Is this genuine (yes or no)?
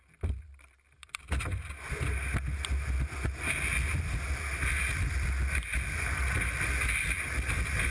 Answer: yes